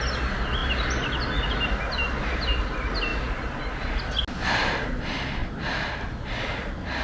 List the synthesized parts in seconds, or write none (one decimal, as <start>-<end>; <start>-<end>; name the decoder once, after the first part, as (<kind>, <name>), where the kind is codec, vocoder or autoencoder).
none